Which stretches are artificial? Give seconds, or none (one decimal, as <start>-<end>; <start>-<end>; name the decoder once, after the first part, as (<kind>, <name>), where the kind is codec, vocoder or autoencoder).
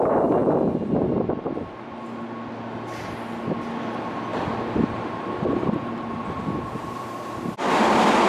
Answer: 4.3-8.3 (vocoder, BigVGAN v2)